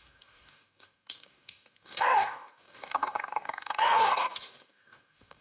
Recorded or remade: remade